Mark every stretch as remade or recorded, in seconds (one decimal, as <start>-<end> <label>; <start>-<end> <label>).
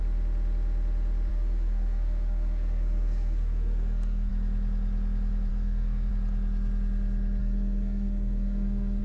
0.0-1.3 recorded; 1.3-4.3 remade; 4.3-5.5 recorded; 5.5-6.1 remade; 6.1-7.4 recorded; 7.4-9.0 remade